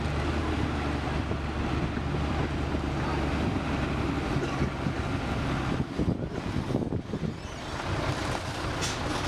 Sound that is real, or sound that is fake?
real